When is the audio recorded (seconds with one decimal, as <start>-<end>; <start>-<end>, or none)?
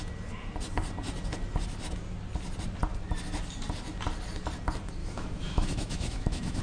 0.0-5.0